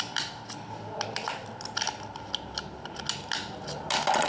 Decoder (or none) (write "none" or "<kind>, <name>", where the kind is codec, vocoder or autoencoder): none